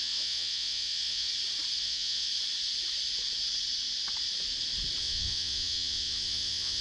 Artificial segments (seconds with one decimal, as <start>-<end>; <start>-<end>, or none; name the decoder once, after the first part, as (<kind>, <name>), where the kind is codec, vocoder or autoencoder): 0.0-1.3 (vocoder, WaveNeXt); 1.8-2.3; 5.0-6.8